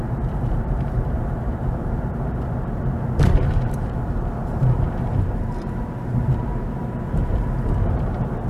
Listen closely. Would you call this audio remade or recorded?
remade